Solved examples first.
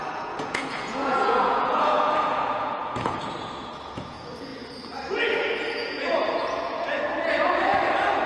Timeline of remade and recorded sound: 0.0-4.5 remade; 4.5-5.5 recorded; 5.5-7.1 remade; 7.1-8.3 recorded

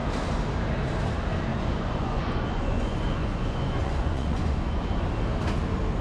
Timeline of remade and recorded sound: 0.0-1.5 recorded; 1.5-5.1 remade; 5.1-6.0 recorded

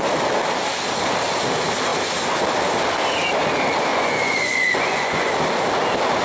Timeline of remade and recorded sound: 0.0-3.9 recorded; 3.9-5.3 remade; 5.3-6.2 recorded

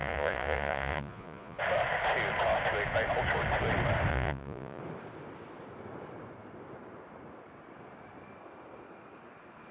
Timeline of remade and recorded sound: 0.0-1.6 remade; 1.6-4.1 recorded; 4.1-4.8 remade; 4.8-9.7 recorded

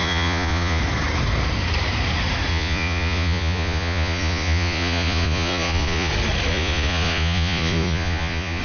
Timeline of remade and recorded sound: 0.0-0.8 remade; 0.8-2.5 recorded; 2.5-6.1 remade; 6.1-6.5 recorded; 6.5-8.6 remade

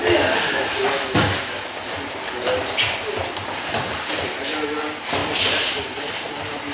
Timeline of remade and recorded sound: 0.0-6.7 recorded

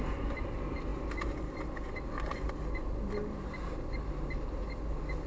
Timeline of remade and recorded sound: 0.0-5.3 recorded

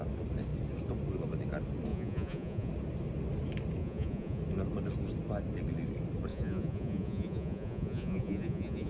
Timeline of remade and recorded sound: 0.0-1.9 recorded; 1.9-2.7 remade; 2.7-3.8 recorded; 3.8-4.4 remade; 4.4-6.3 recorded; 6.3-8.9 remade